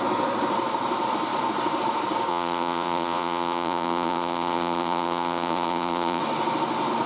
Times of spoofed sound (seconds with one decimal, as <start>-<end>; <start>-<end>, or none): 2.3-6.2